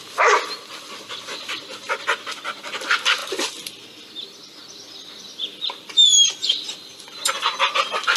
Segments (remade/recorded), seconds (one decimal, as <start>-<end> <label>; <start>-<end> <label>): 0.0-3.2 recorded; 3.2-4.1 remade; 4.1-4.6 recorded; 4.6-7.3 remade; 7.3-8.2 recorded